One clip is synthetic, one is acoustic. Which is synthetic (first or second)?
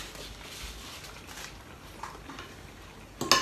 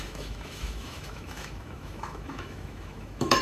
second